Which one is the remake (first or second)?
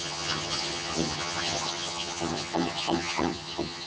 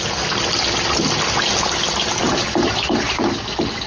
first